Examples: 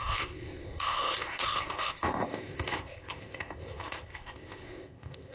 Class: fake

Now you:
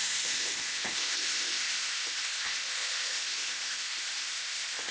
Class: fake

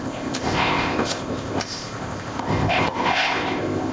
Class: fake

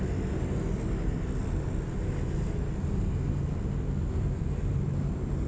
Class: real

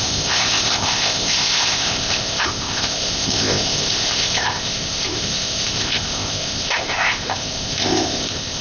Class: fake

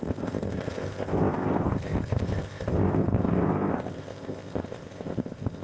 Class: fake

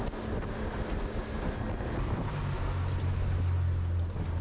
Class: real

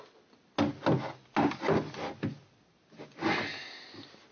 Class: real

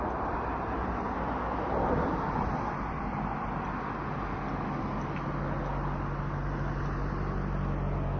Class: real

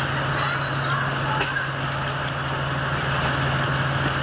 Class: real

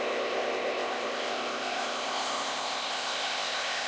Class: fake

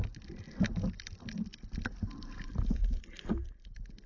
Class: real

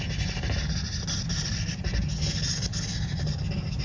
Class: real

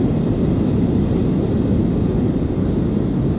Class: real